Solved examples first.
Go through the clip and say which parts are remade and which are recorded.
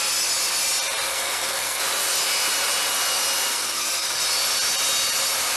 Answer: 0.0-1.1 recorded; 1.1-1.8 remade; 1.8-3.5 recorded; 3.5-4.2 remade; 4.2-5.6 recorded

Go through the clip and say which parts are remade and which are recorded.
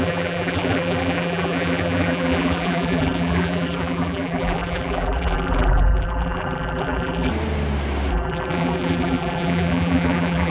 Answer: 0.0-7.3 remade; 7.3-8.1 recorded; 8.1-10.5 remade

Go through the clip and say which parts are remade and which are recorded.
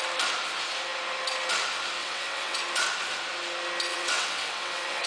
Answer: 0.0-2.0 recorded; 2.0-2.6 remade; 2.6-3.9 recorded; 3.9-5.1 remade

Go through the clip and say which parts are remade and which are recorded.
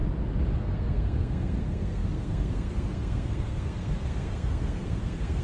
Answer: 0.0-0.6 recorded; 0.6-5.4 remade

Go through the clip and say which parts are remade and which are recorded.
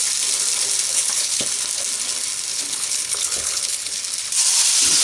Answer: 0.0-0.9 recorded; 0.9-1.4 remade; 1.4-2.5 recorded; 2.5-4.0 remade; 4.0-5.0 recorded